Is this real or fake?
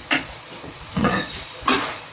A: fake